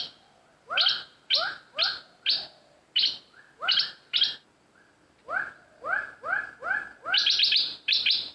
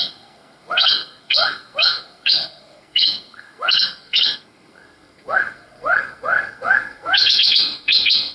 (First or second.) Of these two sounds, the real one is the first